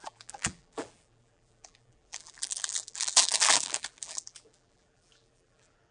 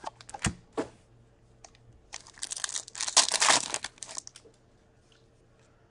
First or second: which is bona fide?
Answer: second